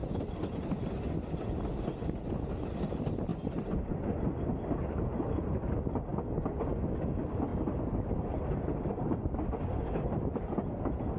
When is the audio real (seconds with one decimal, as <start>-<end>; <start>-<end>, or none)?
0.0-11.2